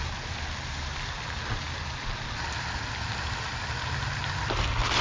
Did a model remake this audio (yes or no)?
no